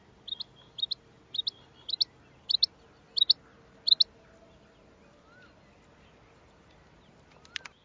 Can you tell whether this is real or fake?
real